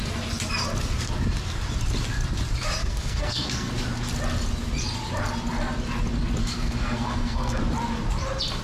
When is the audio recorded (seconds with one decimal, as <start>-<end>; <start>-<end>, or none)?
0.0-2.8; 3.7-6.4; 7.6-8.6